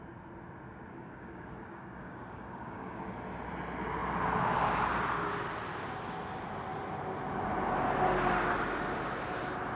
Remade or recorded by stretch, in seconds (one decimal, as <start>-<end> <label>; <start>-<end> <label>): 0.0-0.9 recorded; 0.9-3.2 remade; 3.2-9.8 recorded